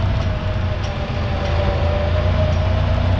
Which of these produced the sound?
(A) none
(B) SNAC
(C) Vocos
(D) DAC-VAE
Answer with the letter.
A